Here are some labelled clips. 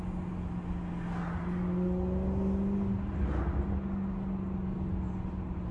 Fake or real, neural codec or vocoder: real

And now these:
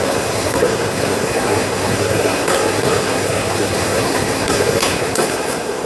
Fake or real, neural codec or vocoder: fake, codec, SNAC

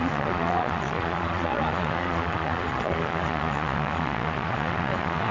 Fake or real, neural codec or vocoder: fake, vocoder, Vocos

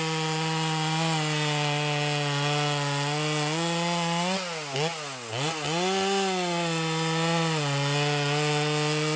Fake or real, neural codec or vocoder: real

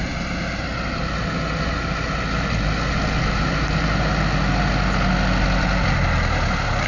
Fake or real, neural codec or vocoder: real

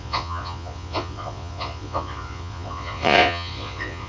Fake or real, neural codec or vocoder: fake, vocoder, Vocos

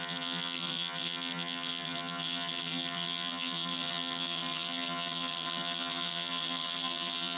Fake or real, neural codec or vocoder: fake, vocoder, HiFi-GAN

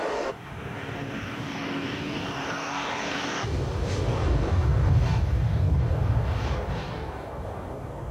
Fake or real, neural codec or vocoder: fake, codec, DAC